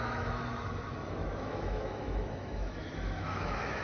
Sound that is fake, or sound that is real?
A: fake